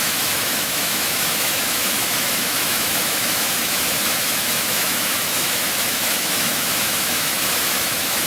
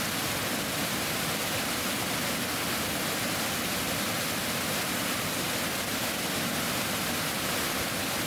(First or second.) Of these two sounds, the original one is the second